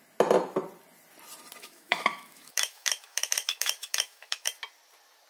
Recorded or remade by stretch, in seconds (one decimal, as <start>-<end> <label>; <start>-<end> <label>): 0.0-1.6 recorded; 1.6-4.5 remade; 4.5-5.3 recorded